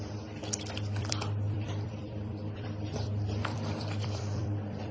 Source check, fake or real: fake